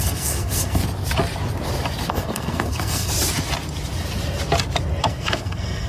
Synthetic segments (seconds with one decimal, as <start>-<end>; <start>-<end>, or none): 0.0-0.8; 2.1-3.1; 5.0-5.9